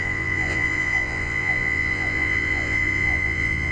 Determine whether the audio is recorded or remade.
remade